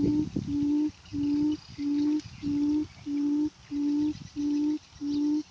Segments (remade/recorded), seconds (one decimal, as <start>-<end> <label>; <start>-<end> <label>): 0.0-5.5 recorded